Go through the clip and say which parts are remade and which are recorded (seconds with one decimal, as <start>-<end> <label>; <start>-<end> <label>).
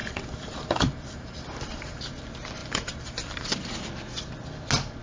0.0-2.2 remade; 2.2-2.6 recorded; 2.6-3.9 remade; 3.9-5.0 recorded